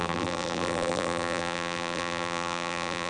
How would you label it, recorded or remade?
remade